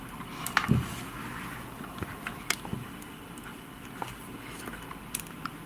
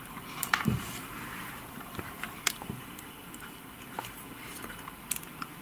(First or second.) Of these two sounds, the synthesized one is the second